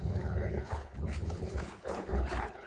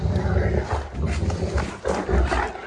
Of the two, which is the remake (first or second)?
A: first